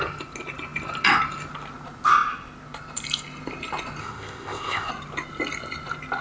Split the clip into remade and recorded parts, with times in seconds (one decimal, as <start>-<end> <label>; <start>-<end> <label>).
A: 0.0-4.0 recorded; 4.0-4.9 remade; 4.9-6.2 recorded